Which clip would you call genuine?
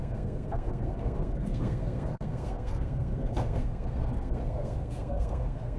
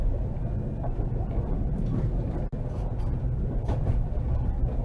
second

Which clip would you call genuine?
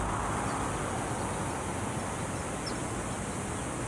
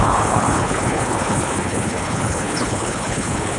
first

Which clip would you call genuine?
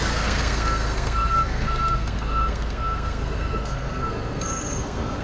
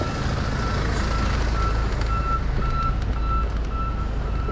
second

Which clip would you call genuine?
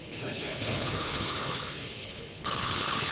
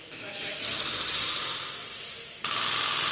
second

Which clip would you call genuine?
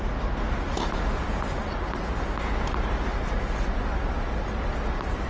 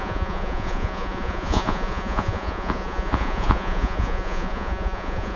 first